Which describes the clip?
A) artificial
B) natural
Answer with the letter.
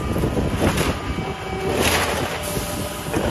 B